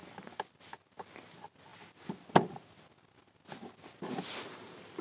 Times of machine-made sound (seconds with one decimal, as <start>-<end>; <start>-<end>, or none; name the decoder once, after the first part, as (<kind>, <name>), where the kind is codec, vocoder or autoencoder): none